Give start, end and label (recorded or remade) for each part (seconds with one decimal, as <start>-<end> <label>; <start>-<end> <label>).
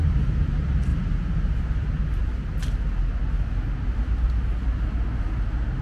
0.0-0.9 remade; 0.9-1.6 recorded; 1.6-2.0 remade; 2.0-5.8 recorded